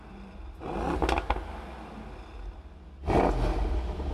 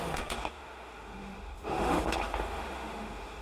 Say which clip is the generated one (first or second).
second